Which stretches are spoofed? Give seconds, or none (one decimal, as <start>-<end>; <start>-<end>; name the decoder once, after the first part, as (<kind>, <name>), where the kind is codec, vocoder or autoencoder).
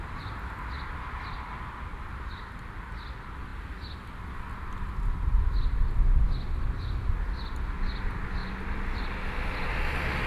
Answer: none